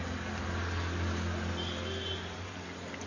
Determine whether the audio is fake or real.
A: real